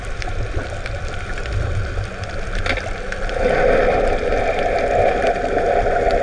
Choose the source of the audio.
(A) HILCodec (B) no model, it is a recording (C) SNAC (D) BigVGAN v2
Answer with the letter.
B